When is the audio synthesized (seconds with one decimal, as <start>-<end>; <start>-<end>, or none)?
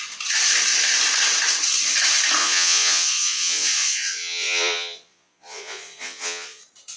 2.4-6.6